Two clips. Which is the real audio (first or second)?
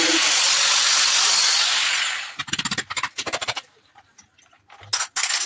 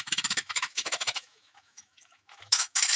first